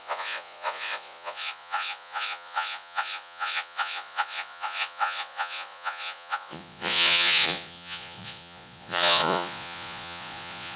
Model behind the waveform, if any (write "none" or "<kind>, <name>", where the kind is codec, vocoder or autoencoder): vocoder, Vocos